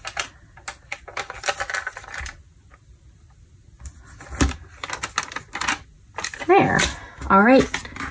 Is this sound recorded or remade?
recorded